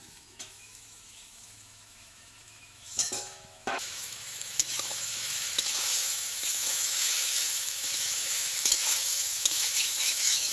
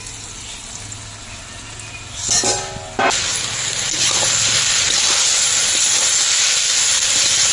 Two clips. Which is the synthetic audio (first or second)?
first